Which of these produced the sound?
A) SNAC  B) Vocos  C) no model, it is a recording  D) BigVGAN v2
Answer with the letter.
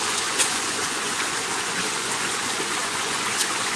B